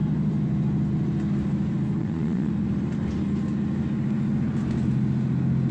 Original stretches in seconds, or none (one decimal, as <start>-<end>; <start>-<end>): 0.0-2.0; 2.5-5.7